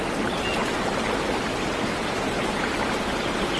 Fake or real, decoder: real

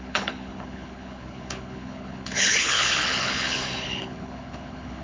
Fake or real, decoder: fake, codec, HILCodec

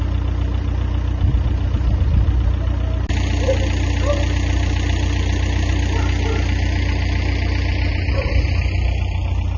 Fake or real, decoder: real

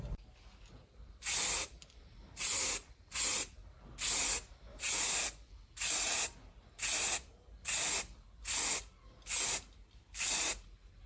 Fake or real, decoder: real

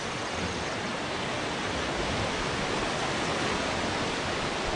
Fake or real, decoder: real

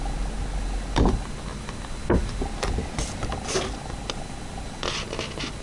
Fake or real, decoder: real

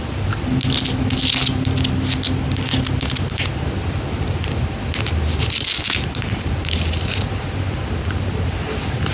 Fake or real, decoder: real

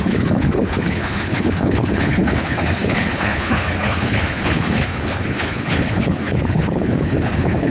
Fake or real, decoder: fake, codec, HILCodec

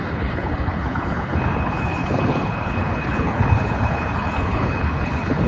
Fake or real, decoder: fake, codec, HILCodec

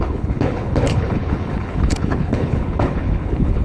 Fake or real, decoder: fake, codec, HILCodec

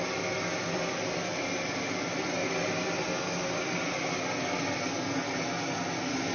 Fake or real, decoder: real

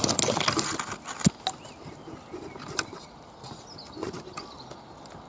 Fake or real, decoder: real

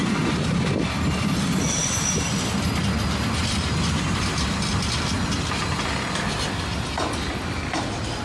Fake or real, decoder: real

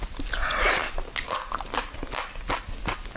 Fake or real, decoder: real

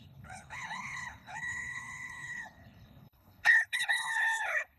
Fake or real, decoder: fake, codec, HILCodec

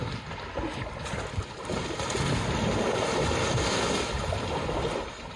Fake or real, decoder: real